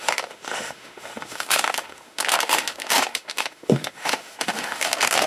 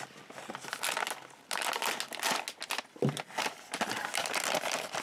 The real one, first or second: second